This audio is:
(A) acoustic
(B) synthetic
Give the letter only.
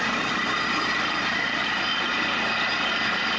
A